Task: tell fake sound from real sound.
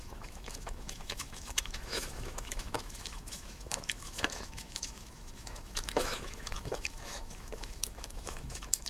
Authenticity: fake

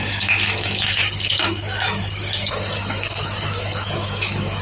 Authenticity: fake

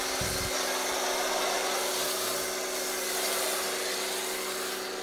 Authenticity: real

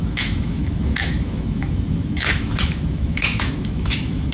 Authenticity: fake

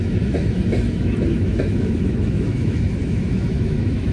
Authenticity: fake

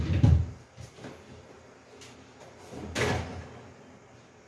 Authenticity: real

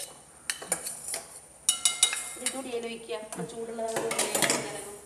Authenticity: real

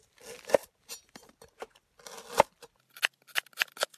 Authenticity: real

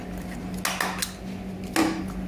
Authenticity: real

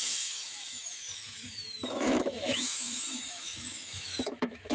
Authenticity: fake